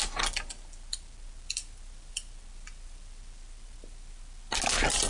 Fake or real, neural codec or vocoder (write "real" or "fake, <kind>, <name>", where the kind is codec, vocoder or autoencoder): real